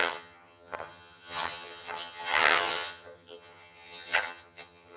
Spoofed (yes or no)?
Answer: yes